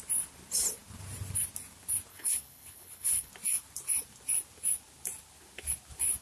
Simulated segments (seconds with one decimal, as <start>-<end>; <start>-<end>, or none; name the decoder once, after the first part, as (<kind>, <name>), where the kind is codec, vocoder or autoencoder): 2.1-3.3 (codec, HILCodec)